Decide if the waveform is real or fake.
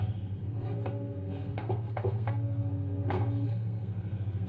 fake